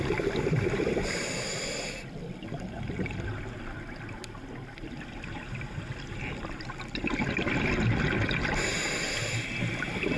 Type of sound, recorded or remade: recorded